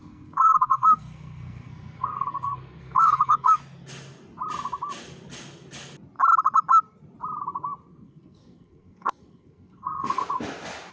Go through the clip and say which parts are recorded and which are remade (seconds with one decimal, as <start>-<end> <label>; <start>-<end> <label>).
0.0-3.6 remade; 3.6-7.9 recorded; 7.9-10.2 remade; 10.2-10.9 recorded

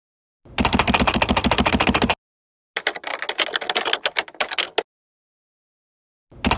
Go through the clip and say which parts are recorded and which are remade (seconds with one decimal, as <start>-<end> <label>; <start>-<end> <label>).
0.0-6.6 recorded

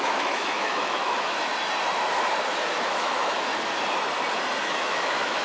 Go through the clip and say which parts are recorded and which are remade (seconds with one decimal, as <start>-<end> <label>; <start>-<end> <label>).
0.0-1.5 remade; 1.5-2.8 recorded; 2.8-3.5 remade; 3.5-4.6 recorded; 4.6-5.4 remade